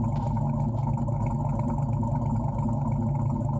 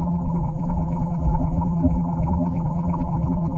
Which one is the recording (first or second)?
first